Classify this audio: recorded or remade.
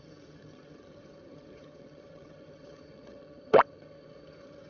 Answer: remade